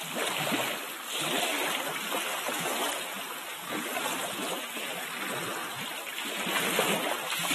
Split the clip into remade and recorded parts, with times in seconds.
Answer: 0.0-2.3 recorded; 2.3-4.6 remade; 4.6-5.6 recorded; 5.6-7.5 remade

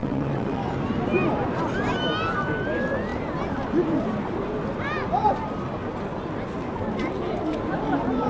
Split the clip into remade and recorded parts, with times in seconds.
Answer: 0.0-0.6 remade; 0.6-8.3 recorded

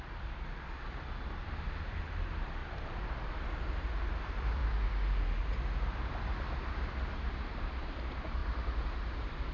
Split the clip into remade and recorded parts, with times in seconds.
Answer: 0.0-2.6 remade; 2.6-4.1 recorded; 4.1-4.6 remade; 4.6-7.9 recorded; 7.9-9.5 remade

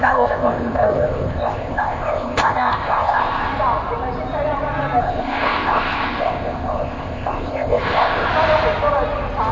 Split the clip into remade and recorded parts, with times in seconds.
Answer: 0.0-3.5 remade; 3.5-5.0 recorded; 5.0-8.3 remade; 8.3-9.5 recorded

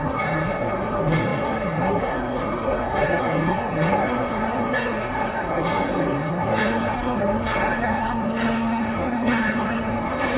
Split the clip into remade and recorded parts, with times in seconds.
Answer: 0.0-10.4 remade

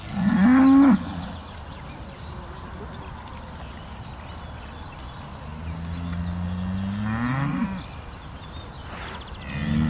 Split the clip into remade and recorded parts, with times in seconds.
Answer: 0.0-9.9 recorded

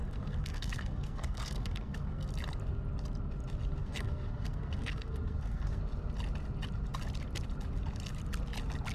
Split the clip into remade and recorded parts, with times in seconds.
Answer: 0.0-2.3 remade; 2.3-3.8 recorded; 3.8-5.8 remade; 5.8-8.9 recorded

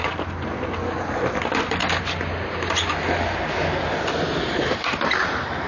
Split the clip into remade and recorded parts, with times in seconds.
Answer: 0.0-5.7 recorded